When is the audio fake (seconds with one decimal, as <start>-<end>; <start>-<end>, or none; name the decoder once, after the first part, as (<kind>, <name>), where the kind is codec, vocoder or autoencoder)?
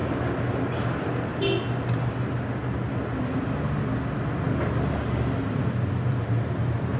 2.6-6.6 (vocoder, BigVGAN v2)